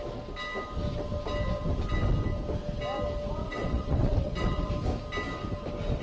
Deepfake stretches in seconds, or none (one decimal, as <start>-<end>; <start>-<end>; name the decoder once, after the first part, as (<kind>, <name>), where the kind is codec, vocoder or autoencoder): 3.4-4.7 (vocoder, WaveNeXt)